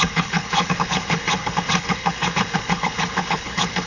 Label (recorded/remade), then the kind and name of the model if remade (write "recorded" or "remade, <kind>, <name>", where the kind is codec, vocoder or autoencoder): remade, codec, HILCodec